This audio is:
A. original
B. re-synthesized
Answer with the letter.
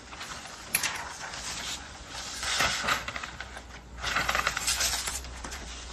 B